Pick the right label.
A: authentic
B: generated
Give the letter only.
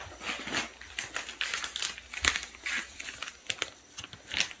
A